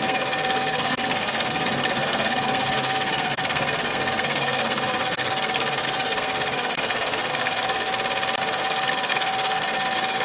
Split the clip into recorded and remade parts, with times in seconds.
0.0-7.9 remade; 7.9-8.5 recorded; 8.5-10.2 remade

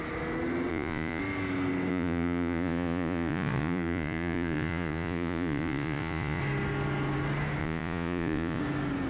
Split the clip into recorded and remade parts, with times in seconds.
0.0-0.7 recorded; 0.7-1.2 remade; 1.2-1.9 recorded; 1.9-6.4 remade; 6.4-7.6 recorded; 7.6-8.6 remade; 8.6-9.1 recorded

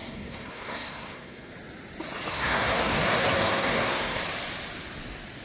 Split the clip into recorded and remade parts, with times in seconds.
0.0-1.5 remade; 1.5-2.3 recorded; 2.3-4.2 remade; 4.2-5.4 recorded

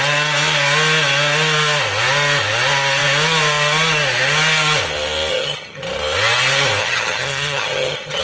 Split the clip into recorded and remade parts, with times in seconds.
0.0-5.3 recorded; 5.3-5.8 remade; 5.8-6.8 recorded; 6.8-8.2 remade

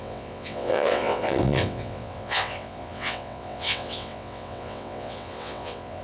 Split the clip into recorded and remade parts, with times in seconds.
0.0-6.0 remade

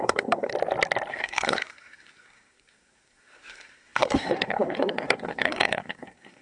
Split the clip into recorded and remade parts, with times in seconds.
0.0-0.5 remade; 0.5-1.1 recorded; 1.1-6.4 remade